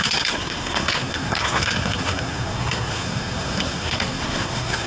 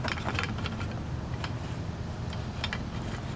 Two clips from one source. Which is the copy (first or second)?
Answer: first